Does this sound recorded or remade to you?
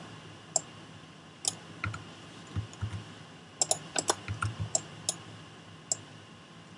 recorded